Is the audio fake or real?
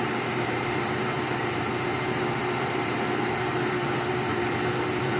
fake